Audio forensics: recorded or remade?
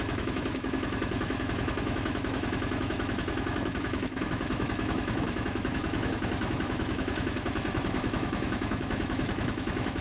remade